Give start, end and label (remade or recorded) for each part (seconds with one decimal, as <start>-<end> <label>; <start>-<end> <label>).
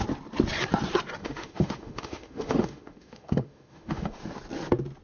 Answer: 0.0-1.2 recorded; 1.2-4.2 remade; 4.2-5.0 recorded